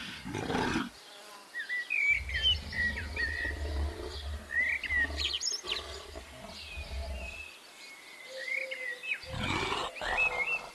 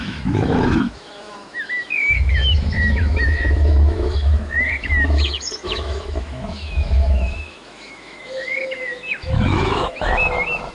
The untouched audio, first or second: first